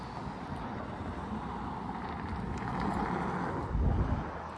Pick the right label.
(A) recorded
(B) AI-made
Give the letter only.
A